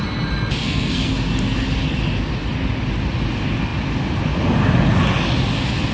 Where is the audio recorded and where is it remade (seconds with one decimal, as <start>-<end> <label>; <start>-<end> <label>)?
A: 0.0-0.6 recorded; 0.6-1.1 remade; 1.1-5.9 recorded